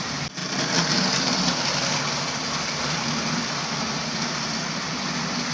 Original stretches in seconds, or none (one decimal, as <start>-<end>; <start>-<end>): 0.0-5.5